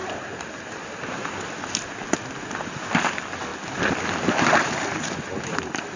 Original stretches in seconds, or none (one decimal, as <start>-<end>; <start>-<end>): 0.6-6.0